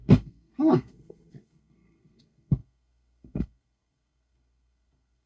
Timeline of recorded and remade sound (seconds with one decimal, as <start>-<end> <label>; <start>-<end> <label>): 0.0-5.3 remade